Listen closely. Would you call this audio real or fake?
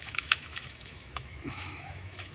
fake